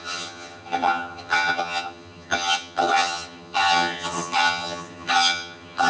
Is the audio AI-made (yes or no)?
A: yes